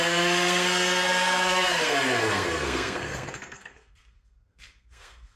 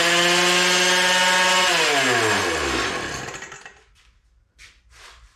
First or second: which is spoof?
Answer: first